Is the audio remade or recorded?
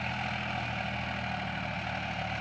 recorded